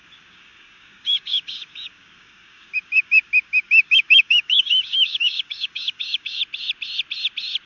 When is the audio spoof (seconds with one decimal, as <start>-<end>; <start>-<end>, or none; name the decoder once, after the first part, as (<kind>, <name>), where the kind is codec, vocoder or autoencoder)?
0.0-6.4 (codec, DAC)